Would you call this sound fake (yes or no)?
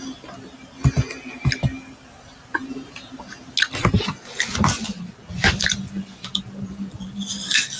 no